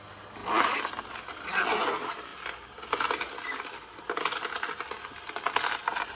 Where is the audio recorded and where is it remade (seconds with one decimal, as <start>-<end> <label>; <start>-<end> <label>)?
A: 0.0-6.2 recorded